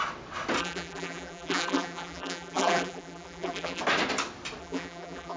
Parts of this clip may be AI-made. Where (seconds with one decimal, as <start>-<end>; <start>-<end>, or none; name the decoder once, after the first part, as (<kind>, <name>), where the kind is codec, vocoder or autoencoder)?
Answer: 0.6-3.8 (vocoder, BigVGAN v2); 4.6-5.4